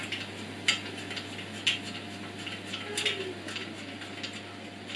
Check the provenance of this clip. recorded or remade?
recorded